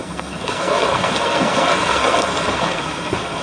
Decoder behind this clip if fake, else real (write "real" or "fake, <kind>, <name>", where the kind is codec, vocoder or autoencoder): fake, codec, SNAC